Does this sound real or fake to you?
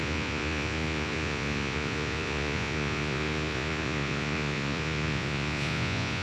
fake